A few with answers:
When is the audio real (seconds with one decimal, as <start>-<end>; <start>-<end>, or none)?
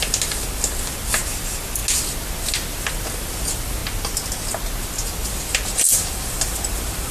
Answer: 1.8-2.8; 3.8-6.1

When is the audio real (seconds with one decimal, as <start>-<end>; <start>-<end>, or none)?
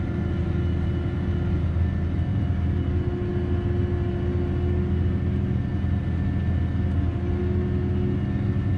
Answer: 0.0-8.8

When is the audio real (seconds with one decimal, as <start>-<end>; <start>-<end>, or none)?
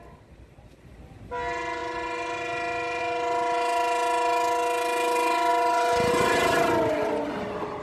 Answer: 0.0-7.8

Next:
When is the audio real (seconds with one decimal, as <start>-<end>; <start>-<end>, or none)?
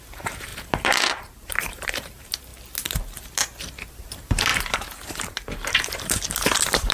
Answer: 2.5-3.9